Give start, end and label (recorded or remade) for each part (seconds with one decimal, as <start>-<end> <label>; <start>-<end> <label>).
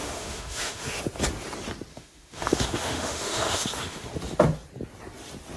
0.0-1.0 remade; 1.0-1.9 recorded; 1.9-4.1 remade; 4.1-5.6 recorded